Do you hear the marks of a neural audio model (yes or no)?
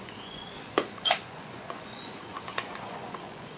yes